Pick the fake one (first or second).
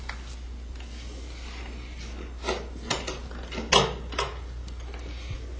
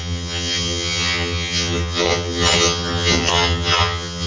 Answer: second